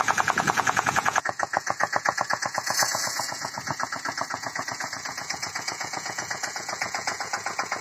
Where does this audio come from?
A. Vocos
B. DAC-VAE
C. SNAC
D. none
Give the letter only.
A